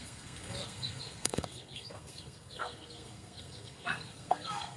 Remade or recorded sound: remade